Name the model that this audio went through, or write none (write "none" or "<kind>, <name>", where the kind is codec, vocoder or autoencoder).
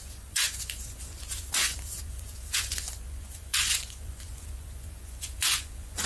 vocoder, Vocos